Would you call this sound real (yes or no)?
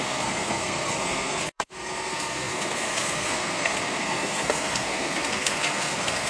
no